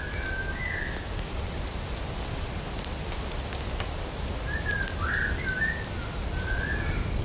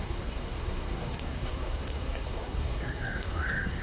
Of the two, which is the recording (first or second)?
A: first